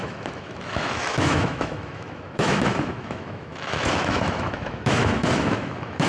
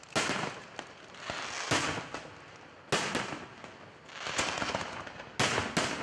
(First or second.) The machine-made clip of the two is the first